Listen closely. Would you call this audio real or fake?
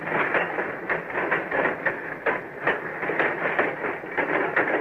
real